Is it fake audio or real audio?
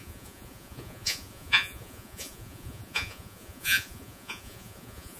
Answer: fake